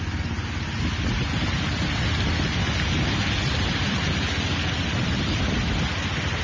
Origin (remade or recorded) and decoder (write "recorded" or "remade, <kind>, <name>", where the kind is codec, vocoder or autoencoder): recorded